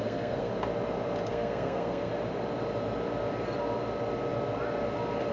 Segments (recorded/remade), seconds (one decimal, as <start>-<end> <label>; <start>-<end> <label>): 0.0-0.5 remade; 0.5-1.3 recorded; 1.3-2.1 remade; 2.1-5.3 recorded